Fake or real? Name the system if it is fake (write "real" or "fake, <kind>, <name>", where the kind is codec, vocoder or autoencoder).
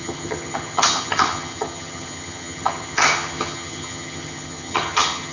fake, vocoder, HiFi-GAN